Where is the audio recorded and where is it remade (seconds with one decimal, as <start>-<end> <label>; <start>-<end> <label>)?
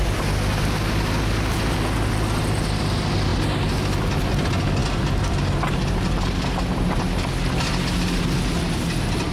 0.0-9.3 recorded